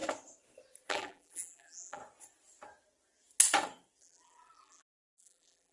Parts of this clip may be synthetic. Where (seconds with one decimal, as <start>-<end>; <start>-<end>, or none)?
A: 0.9-2.0; 4.0-5.7